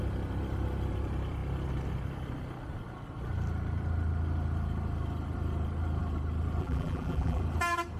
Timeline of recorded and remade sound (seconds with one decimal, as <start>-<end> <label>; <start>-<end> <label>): 0.0-6.6 recorded; 6.6-7.4 remade; 7.4-8.0 recorded